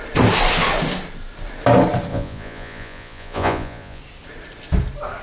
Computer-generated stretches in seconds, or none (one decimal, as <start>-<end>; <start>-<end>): 2.1-4.0